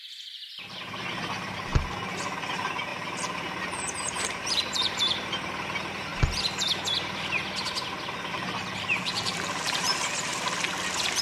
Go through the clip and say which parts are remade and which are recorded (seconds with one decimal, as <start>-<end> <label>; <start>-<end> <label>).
0.0-1.7 remade; 1.7-2.5 recorded; 2.5-6.1 remade; 6.1-8.3 recorded; 8.3-10.3 remade; 10.3-11.2 recorded